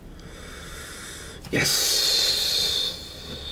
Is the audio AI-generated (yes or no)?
no